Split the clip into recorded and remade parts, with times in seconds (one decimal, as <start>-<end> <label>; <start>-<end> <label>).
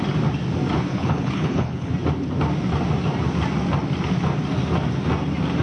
0.0-0.9 recorded; 0.9-1.9 remade; 1.9-5.6 recorded